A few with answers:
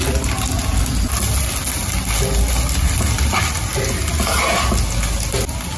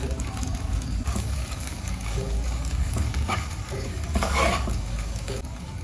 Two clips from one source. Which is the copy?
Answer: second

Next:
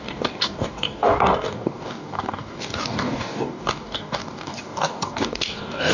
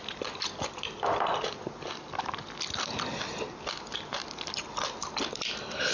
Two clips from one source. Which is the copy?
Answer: first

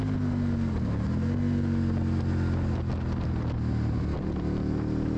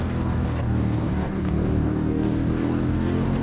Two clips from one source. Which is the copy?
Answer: second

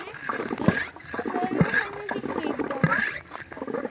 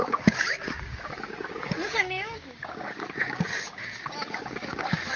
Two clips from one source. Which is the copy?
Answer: second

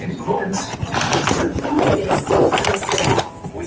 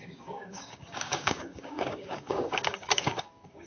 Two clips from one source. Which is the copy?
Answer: second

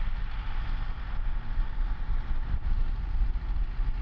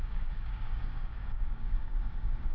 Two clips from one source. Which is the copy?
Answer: second